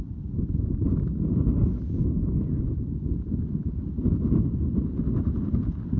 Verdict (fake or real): real